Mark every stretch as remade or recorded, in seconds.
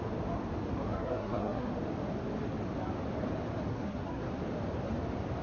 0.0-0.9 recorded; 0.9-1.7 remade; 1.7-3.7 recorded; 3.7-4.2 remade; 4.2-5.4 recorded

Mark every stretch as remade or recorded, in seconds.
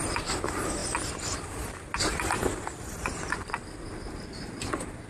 0.0-5.1 recorded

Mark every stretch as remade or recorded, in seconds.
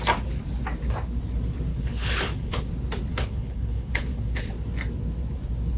0.0-1.7 recorded; 1.7-2.7 remade; 2.7-3.1 recorded; 3.1-4.5 remade; 4.5-5.8 recorded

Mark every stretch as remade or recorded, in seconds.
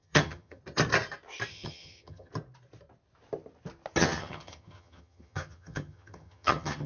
0.0-0.6 remade; 0.6-1.5 recorded; 1.5-2.3 remade; 2.3-4.0 recorded; 4.0-6.9 remade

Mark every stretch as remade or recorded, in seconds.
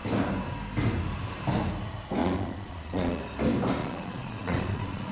0.0-2.2 recorded; 2.2-3.2 remade; 3.2-3.8 recorded; 3.8-5.1 remade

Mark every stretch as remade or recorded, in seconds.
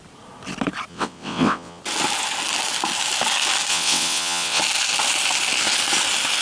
0.0-0.9 recorded; 0.9-1.8 remade; 1.8-3.7 recorded; 3.7-4.6 remade; 4.6-6.4 recorded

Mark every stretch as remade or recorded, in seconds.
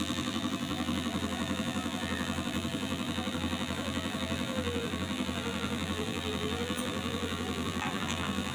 0.0-8.5 remade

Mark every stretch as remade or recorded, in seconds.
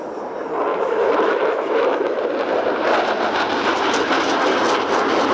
0.0-0.7 recorded; 0.7-2.2 remade; 2.2-5.3 recorded